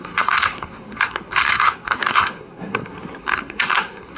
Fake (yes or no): yes